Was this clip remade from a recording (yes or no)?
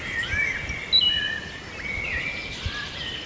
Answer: no